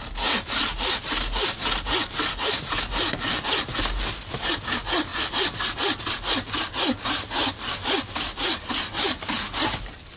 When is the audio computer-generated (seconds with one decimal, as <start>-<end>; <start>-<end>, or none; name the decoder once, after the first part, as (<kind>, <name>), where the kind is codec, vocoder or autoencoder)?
none